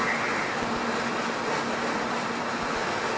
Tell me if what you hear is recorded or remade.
recorded